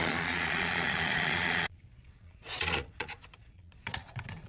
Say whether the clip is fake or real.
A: fake